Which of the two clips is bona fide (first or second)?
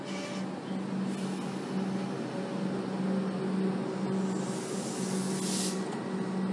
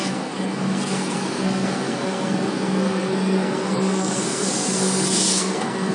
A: first